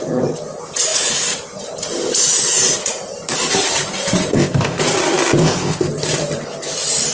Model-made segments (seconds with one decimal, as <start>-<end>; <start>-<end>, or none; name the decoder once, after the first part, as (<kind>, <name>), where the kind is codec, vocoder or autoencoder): 4.3-4.8 (codec, ZipCodec); 5.4-5.9